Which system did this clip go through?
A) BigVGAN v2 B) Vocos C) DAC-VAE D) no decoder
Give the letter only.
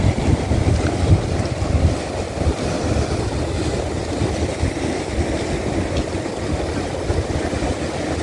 D